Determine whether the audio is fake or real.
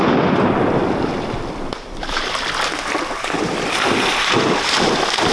fake